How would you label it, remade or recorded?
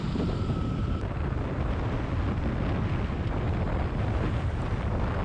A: recorded